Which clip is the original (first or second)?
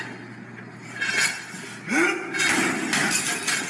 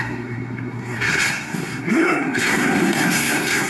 first